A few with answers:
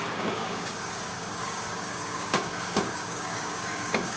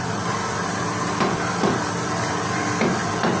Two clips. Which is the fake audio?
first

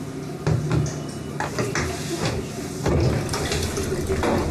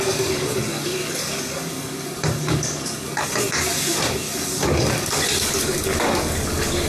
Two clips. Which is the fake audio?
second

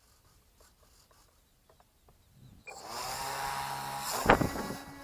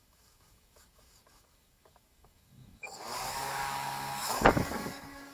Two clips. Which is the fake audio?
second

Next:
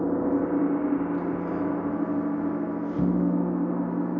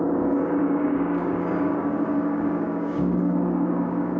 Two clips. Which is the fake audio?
second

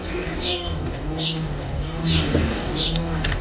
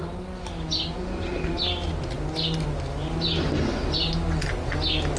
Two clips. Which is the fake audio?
first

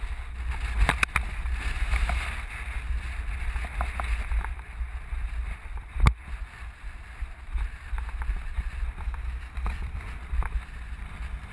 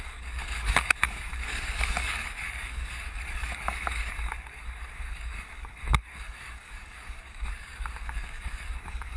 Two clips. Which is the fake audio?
second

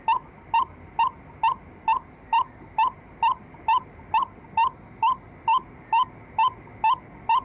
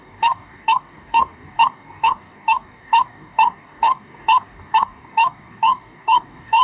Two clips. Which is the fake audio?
second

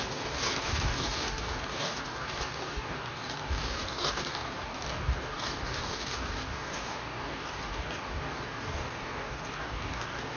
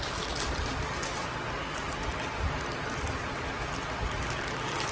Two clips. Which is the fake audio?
first